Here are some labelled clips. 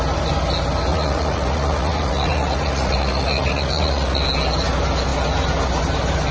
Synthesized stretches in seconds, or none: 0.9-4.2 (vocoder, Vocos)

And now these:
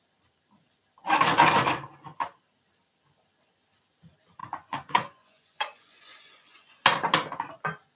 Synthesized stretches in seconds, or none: 4.4-6.8 (vocoder, Vocos)

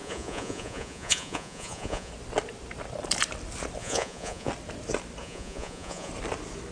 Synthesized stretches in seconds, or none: 0.0-2.1 (vocoder, Vocos); 3.8-4.5; 5.2-6.1